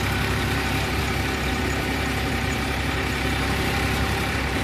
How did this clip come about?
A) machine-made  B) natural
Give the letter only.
A